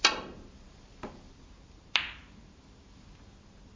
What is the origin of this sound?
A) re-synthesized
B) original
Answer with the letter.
B